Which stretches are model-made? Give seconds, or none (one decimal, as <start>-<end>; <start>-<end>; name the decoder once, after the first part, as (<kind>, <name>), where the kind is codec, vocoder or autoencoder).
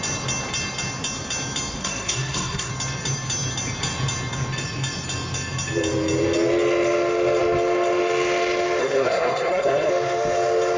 1.8-2.7 (codec, SNAC); 8.8-9.9